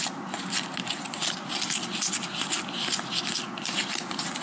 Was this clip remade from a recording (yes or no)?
no